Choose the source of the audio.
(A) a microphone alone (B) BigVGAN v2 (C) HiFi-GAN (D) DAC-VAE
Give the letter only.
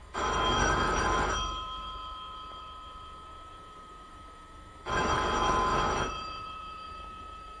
D